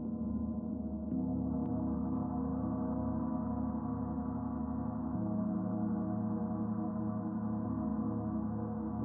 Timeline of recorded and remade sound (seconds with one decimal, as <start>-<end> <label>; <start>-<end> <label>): 0.0-9.0 recorded